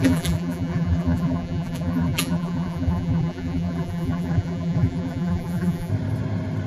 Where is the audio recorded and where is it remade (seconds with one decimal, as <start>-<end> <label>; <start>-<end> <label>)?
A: 0.0-5.9 remade; 5.9-6.7 recorded